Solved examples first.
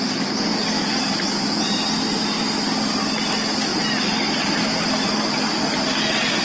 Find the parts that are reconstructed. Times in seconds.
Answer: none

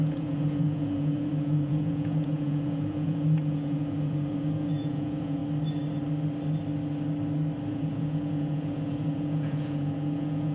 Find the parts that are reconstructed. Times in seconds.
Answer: 0.0-5.4 (vocoder, Vocos); 7.7-10.5

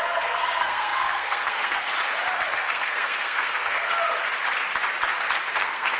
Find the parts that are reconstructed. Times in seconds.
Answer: 0.0-1.9 (codec, SNAC); 2.5-3.9; 5.5-6.0

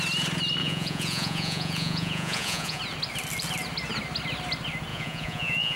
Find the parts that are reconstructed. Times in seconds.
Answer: 0.6-2.8 (vocoder, Vocos); 4.9-5.8

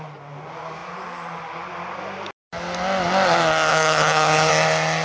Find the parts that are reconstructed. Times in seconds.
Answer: 3.7-4.5 (codec, HILCodec)